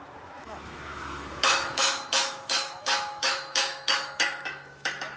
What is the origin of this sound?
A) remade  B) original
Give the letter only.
A